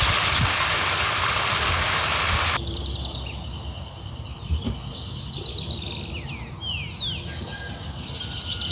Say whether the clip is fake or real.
real